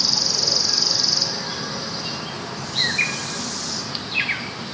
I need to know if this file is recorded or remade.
recorded